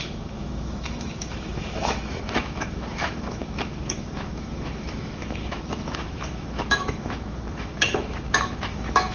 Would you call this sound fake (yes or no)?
yes